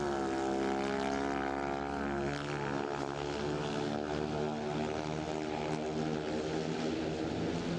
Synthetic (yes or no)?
no